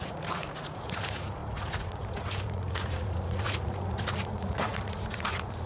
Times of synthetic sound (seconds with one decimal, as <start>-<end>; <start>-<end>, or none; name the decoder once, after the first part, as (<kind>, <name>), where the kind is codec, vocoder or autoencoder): 0.0-5.7 (vocoder, Vocos)